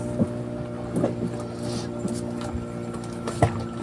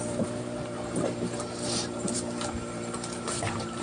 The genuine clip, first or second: first